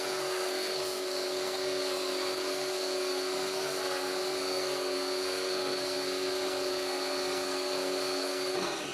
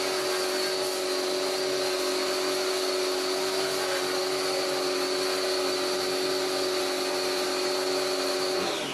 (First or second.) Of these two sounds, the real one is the second